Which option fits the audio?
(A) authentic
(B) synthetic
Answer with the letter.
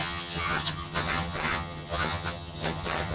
B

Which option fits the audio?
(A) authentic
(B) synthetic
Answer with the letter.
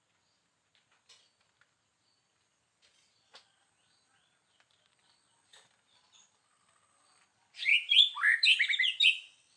A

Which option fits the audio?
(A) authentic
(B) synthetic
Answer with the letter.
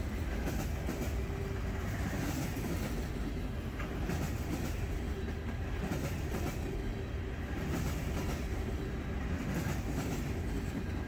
A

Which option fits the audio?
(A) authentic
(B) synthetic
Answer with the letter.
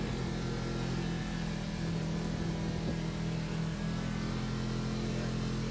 A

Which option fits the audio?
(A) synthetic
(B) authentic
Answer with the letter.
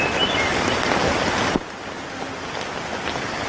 B